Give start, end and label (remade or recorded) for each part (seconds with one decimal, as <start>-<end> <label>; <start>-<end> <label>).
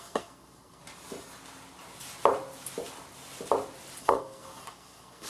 0.0-0.8 remade; 0.8-4.0 recorded; 4.0-5.3 remade